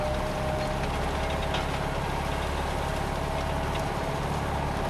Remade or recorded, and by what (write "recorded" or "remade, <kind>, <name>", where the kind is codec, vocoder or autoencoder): recorded